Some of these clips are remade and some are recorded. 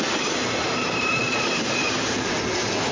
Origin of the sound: remade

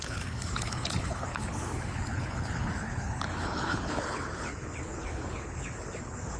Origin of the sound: remade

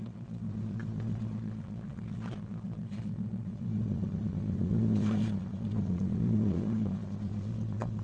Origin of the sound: remade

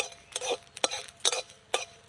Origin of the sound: recorded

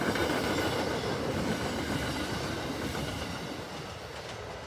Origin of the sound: recorded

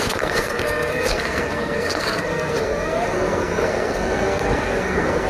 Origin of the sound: remade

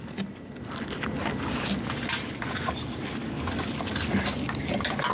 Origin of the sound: recorded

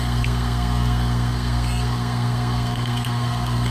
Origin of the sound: remade